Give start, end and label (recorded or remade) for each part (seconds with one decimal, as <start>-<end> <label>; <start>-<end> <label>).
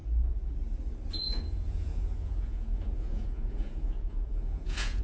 0.0-1.2 recorded; 1.2-5.0 remade